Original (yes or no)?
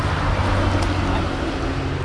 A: yes